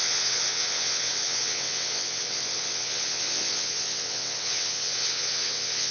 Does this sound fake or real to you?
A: fake